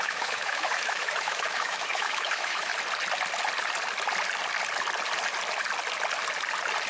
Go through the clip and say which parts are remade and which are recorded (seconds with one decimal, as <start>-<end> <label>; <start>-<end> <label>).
0.0-2.7 remade; 2.7-6.9 recorded